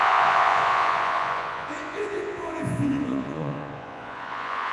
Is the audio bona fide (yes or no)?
no